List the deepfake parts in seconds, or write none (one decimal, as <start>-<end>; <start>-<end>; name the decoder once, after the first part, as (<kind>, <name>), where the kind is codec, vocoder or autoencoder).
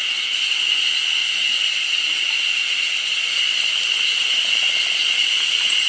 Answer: none